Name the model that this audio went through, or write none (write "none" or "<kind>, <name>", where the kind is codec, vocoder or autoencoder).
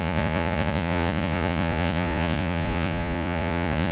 vocoder, Vocos